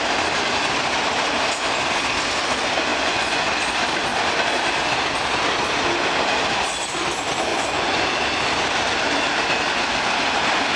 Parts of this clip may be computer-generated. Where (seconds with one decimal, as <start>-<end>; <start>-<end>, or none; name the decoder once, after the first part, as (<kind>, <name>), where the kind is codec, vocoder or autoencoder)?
2.9-3.5 (vocoder, Vocos); 7.5-8.0